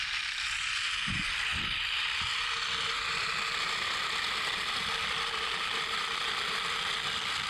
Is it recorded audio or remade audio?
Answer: recorded